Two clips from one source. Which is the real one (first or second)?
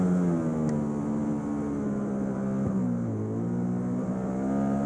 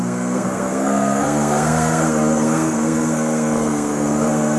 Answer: first